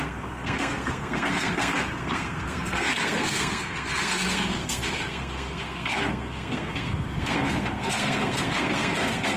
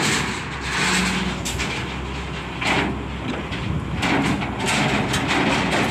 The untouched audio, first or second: second